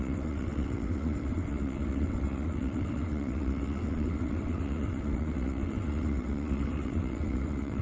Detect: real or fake fake